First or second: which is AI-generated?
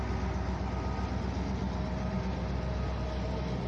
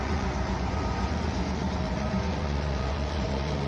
second